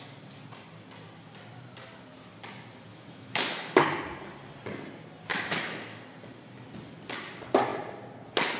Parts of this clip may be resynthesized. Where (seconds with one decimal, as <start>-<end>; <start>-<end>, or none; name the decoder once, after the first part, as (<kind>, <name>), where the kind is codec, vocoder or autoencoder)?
2.9-3.8 (autoencoder, DAC-VAE); 5.3-6.0